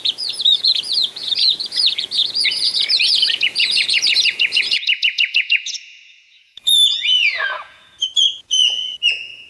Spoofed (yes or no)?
yes